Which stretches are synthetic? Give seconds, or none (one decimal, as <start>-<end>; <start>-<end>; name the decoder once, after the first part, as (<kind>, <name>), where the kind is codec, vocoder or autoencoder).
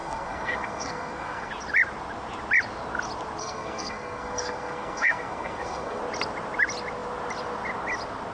0.0-1.5 (codec, SNAC); 3.4-6.0